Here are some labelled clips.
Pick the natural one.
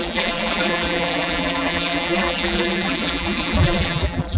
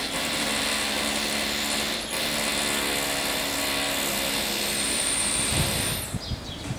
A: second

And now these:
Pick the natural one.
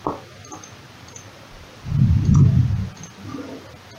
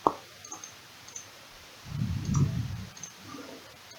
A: first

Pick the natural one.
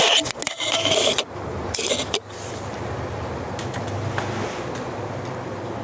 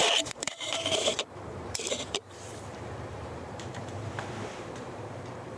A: first